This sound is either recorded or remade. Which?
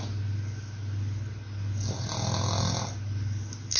recorded